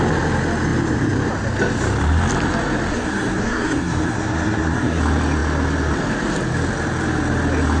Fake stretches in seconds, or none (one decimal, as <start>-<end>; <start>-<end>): 2.9-5.0